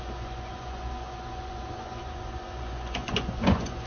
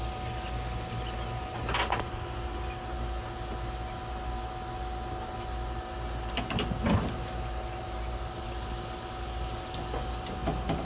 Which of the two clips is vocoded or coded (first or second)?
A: first